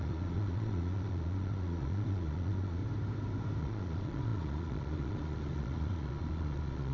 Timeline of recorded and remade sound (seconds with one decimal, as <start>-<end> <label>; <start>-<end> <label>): 0.0-2.8 remade; 2.8-3.6 recorded; 3.6-6.9 remade